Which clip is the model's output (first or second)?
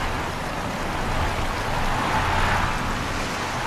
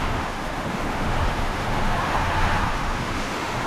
second